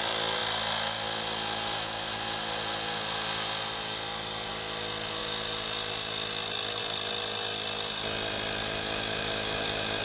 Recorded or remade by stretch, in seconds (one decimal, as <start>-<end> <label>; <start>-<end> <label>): 0.0-8.6 recorded; 8.6-10.0 remade